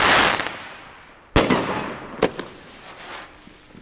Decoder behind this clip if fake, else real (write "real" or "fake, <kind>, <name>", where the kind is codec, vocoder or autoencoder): real